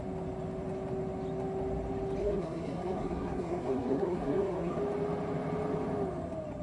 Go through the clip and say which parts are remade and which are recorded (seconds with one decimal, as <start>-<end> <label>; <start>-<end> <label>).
0.0-2.2 recorded; 2.2-4.8 remade; 4.8-6.6 recorded